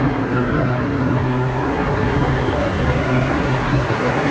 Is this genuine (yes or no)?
no